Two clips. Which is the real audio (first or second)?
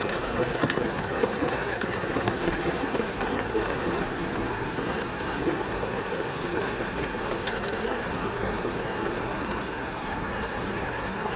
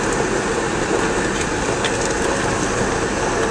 second